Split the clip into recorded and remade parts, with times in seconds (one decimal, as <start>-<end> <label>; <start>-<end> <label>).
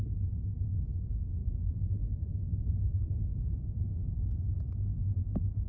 0.0-4.9 recorded; 4.9-5.7 remade